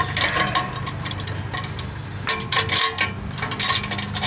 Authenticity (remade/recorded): recorded